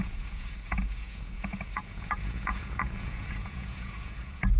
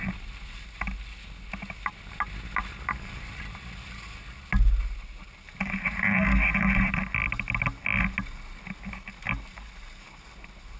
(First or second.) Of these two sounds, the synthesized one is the first